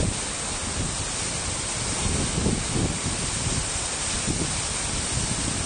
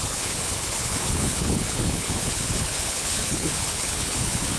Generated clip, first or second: second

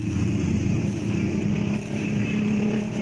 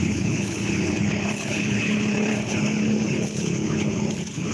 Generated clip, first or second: second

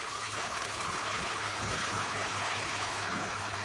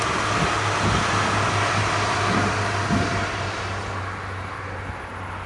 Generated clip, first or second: first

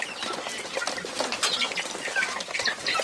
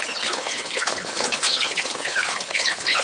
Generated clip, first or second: second